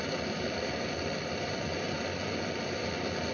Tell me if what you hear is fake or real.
real